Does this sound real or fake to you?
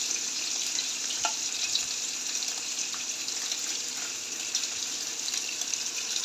fake